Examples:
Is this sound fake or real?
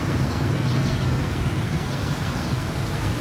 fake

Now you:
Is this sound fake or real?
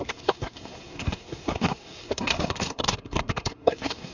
fake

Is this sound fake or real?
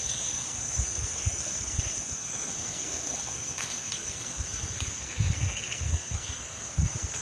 fake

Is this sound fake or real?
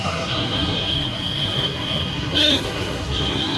fake